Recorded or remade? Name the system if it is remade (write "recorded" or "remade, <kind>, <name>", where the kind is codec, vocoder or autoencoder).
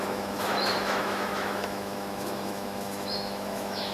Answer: remade, autoencoder, DAC-VAE